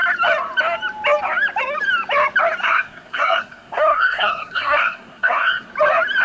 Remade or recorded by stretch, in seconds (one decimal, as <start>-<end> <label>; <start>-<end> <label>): 0.0-2.6 recorded; 2.6-5.7 remade; 5.7-6.2 recorded